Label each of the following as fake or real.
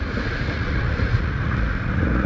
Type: fake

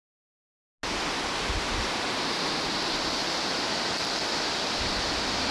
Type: real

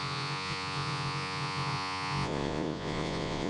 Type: fake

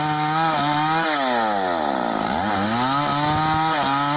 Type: real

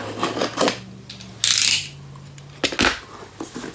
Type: real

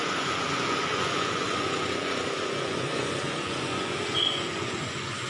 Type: fake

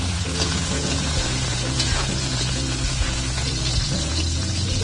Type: fake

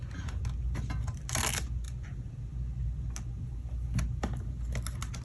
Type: real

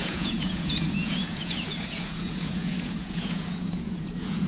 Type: fake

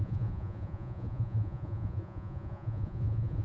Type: fake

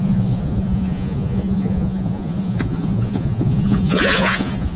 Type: fake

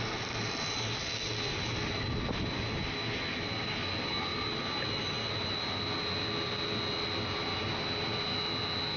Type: real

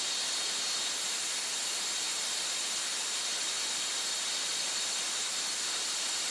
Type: real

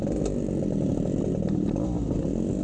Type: real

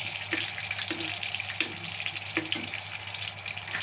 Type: real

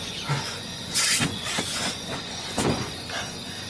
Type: fake